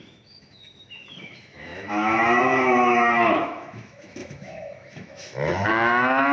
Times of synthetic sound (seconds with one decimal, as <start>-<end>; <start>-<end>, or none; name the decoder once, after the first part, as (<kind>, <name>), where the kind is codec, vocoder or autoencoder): 0.0-6.3 (autoencoder, DAC-VAE)